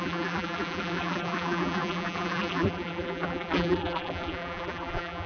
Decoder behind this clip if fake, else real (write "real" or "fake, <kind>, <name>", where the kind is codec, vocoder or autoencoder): fake, vocoder, BigVGAN v2